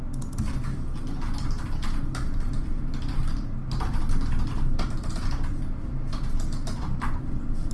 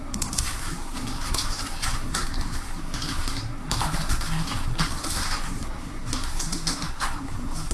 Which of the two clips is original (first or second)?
first